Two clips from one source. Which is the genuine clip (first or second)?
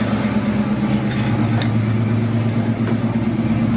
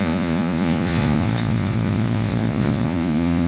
first